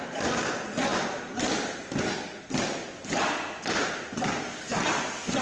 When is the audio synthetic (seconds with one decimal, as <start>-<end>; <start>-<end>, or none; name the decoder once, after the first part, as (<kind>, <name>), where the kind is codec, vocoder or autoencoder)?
none